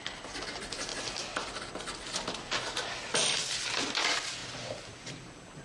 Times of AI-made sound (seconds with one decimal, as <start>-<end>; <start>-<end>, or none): 4.4-5.6